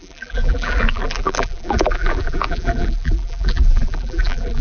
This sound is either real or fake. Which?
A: fake